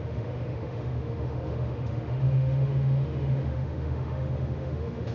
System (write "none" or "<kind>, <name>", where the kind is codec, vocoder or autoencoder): autoencoder, DAC-VAE